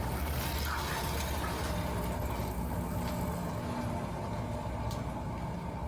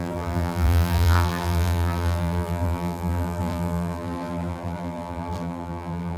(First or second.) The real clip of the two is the first